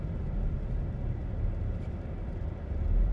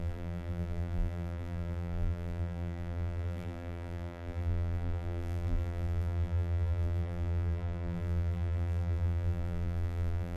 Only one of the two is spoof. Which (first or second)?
second